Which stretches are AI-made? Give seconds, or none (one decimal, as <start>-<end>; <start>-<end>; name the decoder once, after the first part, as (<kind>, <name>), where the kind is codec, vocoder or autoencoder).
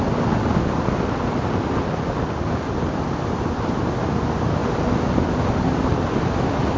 none